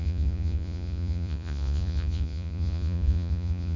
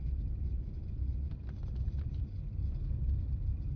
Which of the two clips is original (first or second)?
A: second